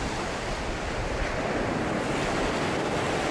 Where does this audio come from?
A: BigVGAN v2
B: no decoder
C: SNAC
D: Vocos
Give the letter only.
B